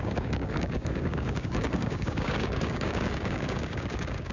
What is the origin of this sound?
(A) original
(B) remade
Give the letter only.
B